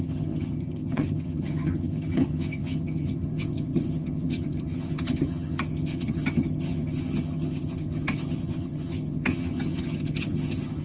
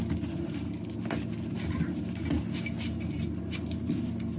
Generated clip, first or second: first